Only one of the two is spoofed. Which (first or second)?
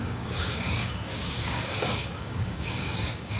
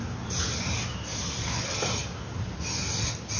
first